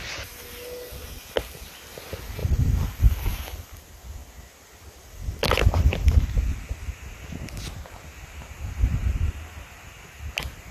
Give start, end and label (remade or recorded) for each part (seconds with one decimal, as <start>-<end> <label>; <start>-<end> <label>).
0.0-9.1 recorded; 9.1-9.7 remade; 9.7-10.7 recorded